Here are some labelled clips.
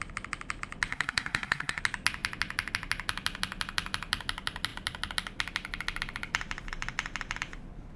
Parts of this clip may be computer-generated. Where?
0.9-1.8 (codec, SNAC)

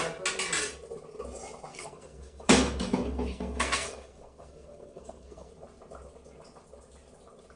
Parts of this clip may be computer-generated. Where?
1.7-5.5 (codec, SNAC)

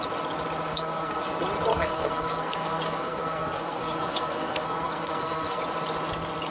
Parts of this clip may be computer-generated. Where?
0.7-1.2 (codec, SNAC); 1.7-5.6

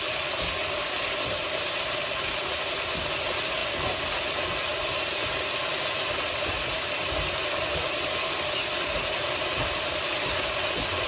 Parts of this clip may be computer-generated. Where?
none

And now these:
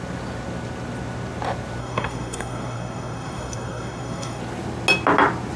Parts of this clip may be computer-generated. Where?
1.8-4.4 (codec, SNAC)

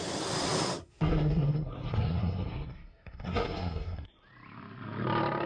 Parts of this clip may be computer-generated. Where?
0.8-4.1 (codec, SNAC)

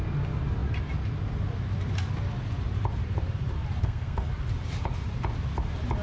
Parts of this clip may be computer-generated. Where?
3.8-4.3 (codec, SNAC)